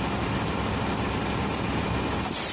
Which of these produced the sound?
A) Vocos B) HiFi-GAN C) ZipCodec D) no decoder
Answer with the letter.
D